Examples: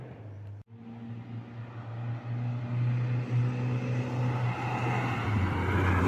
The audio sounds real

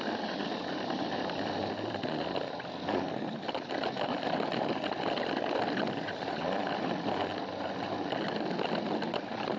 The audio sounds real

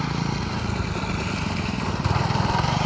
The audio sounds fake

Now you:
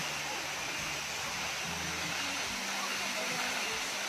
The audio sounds real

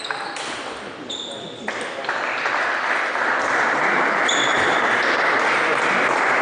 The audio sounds fake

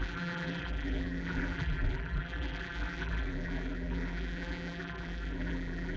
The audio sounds fake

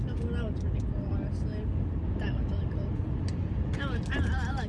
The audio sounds real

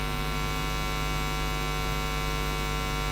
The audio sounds real